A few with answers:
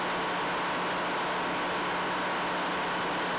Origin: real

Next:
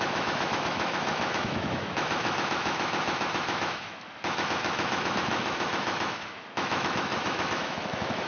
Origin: fake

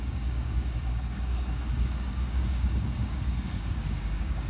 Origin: fake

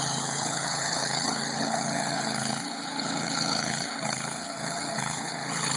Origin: fake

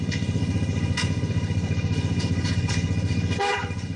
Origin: fake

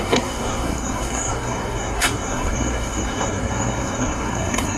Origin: fake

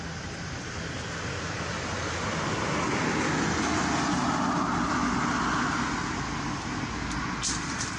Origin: real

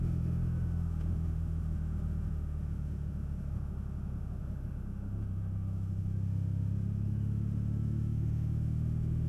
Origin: fake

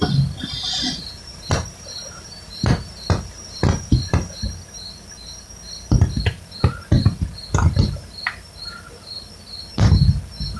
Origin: real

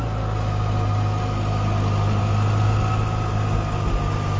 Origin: real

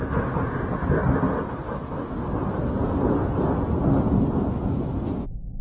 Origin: real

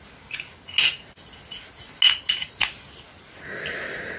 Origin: real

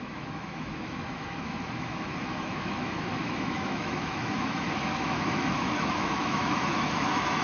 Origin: fake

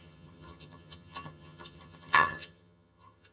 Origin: fake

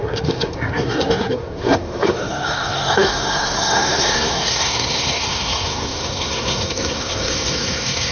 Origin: fake